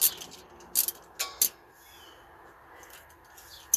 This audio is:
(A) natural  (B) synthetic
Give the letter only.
A